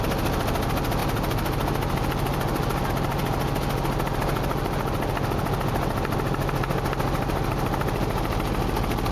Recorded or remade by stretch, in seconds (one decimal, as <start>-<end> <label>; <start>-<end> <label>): 0.0-9.1 recorded